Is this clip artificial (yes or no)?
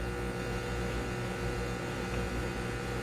no